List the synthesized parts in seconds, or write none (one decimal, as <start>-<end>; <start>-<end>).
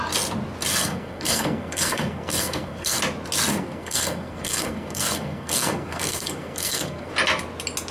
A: 0.7-3.0; 3.5-7.1